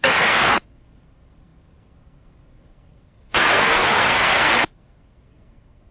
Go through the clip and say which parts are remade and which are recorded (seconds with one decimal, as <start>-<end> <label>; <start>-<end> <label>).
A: 0.0-5.9 remade